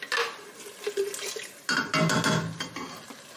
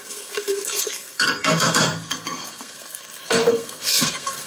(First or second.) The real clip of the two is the first